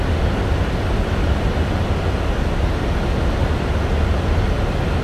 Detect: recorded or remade recorded